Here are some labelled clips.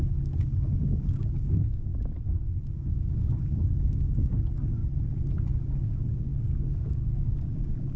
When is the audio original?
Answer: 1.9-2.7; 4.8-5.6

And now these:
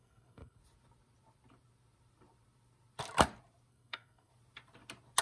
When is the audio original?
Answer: 0.6-3.7; 4.3-5.2

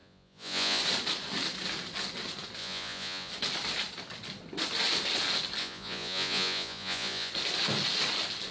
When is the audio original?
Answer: 0.8-2.6; 3.3-5.6; 7.3-8.5

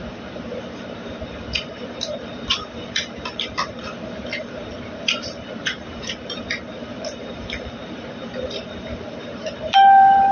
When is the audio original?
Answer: none